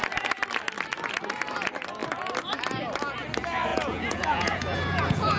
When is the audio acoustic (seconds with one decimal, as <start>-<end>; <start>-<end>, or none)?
0.0-3.7